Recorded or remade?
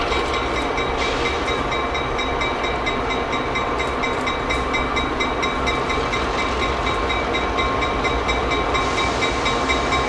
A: recorded